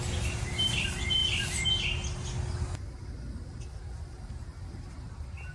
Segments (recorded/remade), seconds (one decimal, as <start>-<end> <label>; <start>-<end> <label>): 0.0-5.5 recorded